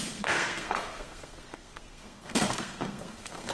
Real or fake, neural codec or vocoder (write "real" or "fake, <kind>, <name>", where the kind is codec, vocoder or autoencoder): fake, codec, SNAC